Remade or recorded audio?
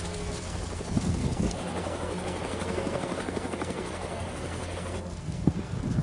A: remade